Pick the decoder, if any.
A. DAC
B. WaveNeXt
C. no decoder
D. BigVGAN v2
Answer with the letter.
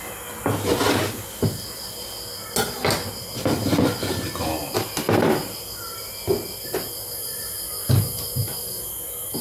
C